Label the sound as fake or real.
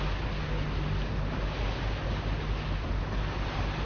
real